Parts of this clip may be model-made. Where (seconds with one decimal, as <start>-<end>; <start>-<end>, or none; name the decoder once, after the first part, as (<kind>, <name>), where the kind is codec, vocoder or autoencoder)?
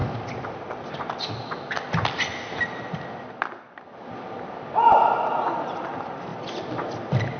none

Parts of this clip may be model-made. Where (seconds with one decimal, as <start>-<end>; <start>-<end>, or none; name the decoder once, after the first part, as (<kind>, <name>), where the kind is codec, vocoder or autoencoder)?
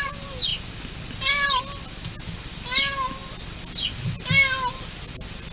none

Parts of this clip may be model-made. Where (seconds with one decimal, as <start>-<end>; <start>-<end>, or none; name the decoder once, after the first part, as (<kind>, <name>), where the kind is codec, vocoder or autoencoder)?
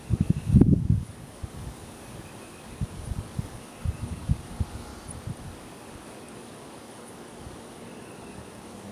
0.0-4.9 (codec, DAC); 5.4-8.9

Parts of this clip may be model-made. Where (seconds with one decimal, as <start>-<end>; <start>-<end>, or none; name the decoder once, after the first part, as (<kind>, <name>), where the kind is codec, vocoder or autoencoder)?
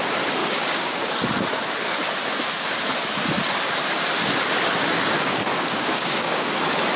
0.4-1.1 (codec, DAC); 5.5-6.6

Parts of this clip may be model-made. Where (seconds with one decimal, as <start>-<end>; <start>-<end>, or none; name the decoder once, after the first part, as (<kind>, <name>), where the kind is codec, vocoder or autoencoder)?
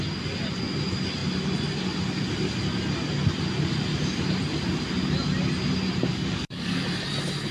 6.1-6.8 (codec, DAC)